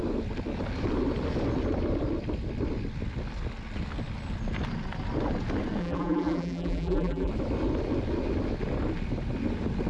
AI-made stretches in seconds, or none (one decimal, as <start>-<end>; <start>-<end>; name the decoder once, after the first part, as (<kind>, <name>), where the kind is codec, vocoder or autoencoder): 5.8-7.3 (vocoder, BigVGAN v2)